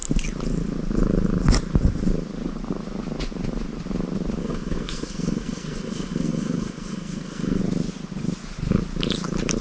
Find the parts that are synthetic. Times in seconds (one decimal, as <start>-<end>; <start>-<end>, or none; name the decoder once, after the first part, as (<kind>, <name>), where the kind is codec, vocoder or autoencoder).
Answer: 4.4-7.6 (codec, SNAC)